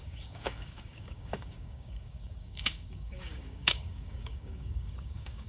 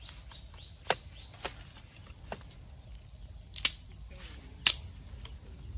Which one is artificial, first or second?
first